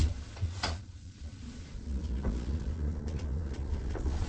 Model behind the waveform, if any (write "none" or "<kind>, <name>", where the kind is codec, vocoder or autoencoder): vocoder, Vocos